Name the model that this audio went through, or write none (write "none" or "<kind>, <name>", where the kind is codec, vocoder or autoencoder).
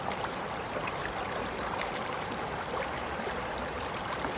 vocoder, BigVGAN v2